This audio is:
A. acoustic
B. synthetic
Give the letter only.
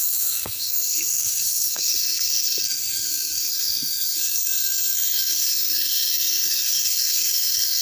B